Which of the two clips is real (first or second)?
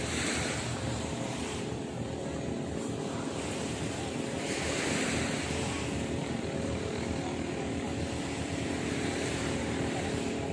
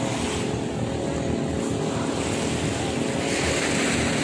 second